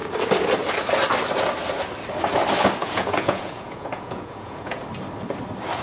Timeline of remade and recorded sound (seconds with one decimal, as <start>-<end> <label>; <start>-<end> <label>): 0.0-2.8 recorded; 2.8-4.8 remade; 4.8-5.8 recorded